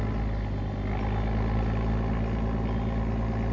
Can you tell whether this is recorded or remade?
recorded